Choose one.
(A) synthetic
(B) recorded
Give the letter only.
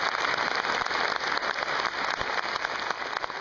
B